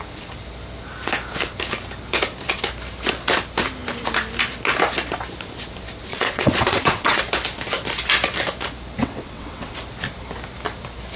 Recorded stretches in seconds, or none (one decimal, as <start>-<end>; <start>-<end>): 0.0-6.1; 7.2-9.0; 9.7-11.2